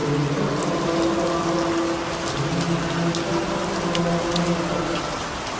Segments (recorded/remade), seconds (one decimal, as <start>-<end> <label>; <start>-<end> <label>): 0.0-5.6 recorded